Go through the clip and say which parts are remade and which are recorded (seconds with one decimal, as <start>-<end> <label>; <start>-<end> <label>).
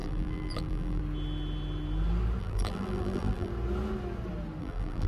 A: 0.0-1.0 remade; 1.0-2.4 recorded; 2.4-3.5 remade; 3.5-4.6 recorded; 4.6-5.1 remade